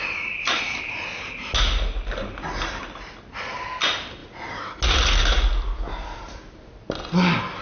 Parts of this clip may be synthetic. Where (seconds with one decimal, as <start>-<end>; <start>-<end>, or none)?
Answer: none